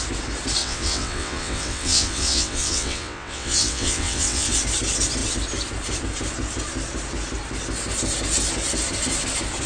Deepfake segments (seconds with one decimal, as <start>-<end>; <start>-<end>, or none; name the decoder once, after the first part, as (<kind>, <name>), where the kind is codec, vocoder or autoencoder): 0.6-4.5 (vocoder, WaveNeXt)